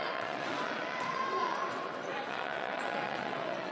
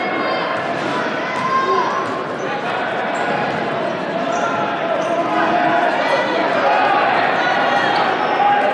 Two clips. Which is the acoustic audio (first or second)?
second